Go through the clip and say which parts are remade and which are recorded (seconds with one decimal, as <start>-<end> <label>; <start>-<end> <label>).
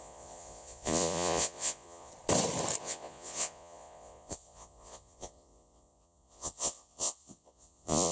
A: 0.0-2.1 remade; 2.1-2.8 recorded; 2.8-8.1 remade